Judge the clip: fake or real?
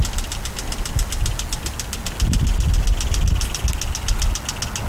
real